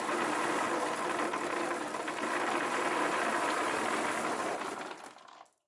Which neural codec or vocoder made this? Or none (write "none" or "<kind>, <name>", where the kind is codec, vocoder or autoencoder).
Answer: none